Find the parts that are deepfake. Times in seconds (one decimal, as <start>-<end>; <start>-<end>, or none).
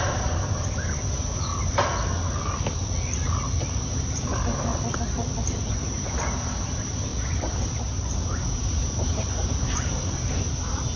0.0-1.5; 3.8-4.7; 5.7-11.0